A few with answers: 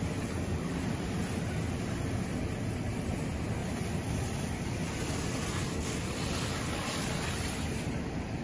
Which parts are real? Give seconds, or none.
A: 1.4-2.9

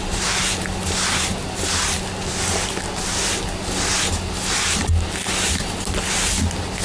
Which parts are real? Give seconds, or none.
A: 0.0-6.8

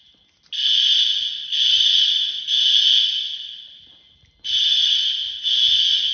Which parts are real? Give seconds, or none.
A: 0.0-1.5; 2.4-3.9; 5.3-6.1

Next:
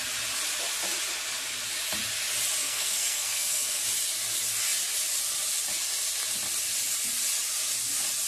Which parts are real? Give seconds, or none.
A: 0.0-2.6; 3.8-8.3

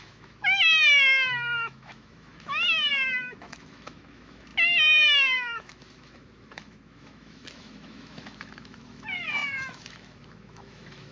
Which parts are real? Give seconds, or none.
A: none